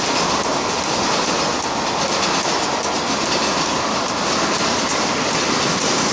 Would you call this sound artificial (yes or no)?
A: no